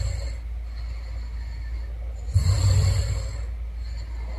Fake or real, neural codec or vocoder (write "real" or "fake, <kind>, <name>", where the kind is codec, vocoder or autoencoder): real